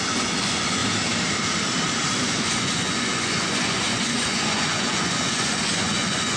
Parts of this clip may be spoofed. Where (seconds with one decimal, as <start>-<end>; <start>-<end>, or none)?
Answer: 0.0-0.8; 2.2-6.4